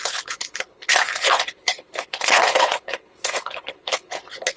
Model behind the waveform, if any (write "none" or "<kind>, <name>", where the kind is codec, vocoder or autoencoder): codec, HILCodec